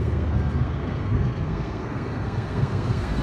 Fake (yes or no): yes